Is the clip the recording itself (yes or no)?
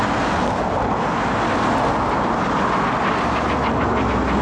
yes